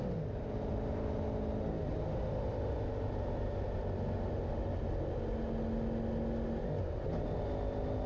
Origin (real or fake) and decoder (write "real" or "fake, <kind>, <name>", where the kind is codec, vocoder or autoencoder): real